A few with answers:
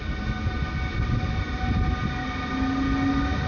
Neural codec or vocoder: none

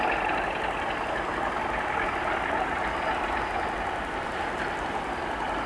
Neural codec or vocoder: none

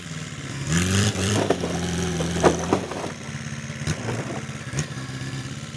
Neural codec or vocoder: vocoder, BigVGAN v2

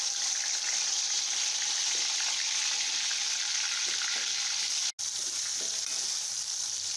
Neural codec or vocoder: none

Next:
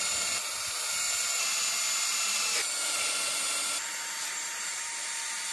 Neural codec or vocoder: vocoder, BigVGAN v2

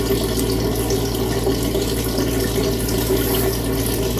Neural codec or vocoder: none